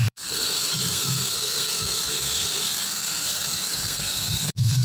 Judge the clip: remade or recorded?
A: remade